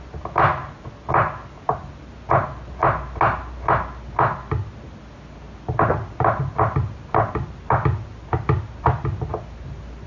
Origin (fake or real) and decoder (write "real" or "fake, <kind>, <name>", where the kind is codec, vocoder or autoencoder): real